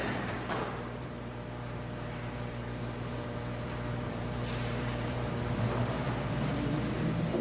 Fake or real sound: fake